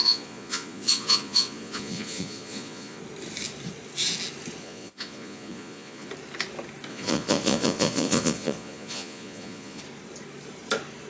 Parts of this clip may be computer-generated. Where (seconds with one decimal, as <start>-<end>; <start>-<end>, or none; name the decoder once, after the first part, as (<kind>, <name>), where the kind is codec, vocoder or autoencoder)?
0.0-3.0 (vocoder, Vocos); 4.6-6.1; 6.9-9.8